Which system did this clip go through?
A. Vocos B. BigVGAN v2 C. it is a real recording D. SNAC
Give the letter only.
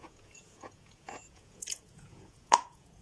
A